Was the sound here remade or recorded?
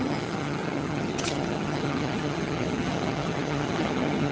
remade